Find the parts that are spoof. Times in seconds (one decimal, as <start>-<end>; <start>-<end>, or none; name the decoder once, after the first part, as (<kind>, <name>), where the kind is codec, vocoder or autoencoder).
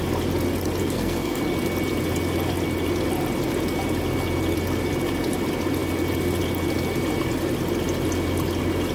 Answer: 0.8-1.4 (codec, SNAC)